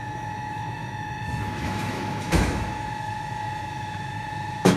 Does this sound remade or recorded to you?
remade